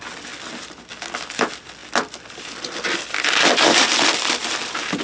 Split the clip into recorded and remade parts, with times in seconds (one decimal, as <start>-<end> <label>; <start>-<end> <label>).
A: 0.0-1.8 recorded; 1.8-5.0 remade